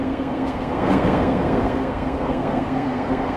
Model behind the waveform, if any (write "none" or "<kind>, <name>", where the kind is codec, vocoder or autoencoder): codec, SNAC